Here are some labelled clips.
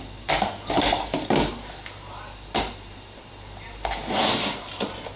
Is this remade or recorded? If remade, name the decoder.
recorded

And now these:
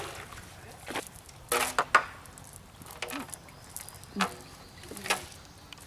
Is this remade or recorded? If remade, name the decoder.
recorded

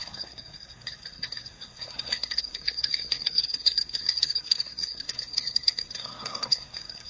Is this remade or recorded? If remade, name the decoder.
remade, codec, SNAC